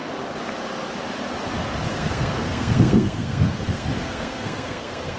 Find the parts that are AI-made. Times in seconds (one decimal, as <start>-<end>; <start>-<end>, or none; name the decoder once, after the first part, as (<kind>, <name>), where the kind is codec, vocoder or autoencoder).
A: 1.9-5.2 (codec, SNAC)